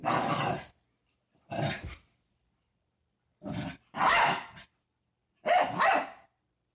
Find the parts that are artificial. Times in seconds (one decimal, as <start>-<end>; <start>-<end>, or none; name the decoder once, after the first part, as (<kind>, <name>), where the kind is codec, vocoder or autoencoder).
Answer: 0.0-6.7 (vocoder, BigVGAN v2)